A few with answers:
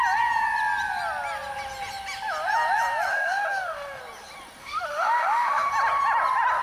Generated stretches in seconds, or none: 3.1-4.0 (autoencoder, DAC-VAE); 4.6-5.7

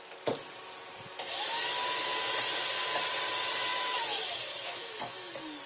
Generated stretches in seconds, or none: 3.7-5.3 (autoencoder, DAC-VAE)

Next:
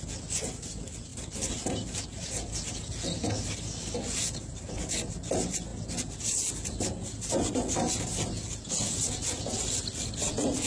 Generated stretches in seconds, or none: none

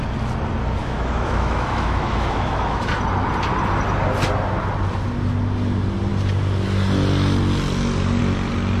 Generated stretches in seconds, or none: 0.8-2.9 (autoencoder, DAC-VAE)